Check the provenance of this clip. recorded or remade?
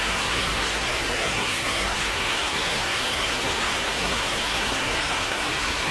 remade